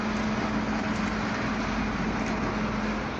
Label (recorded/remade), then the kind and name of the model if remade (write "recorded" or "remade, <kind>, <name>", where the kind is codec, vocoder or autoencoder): recorded